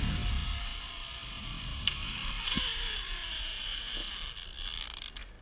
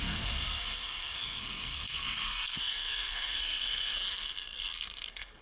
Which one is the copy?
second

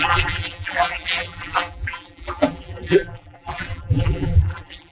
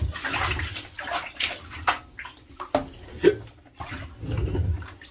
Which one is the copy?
first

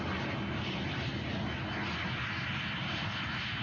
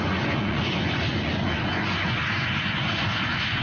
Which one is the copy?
second